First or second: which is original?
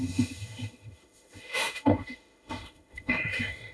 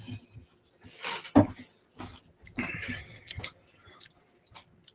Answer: second